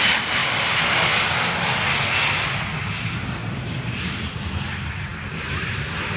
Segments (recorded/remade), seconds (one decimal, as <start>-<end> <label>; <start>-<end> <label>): 0.0-0.4 remade; 0.4-3.0 recorded; 3.0-6.2 remade